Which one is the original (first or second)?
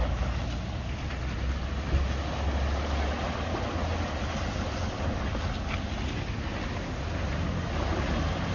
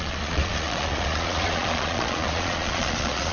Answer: first